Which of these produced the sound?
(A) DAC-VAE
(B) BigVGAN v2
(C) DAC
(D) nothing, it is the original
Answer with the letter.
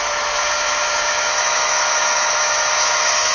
A